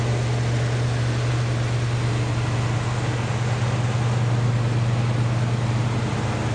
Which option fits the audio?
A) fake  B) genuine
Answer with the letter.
B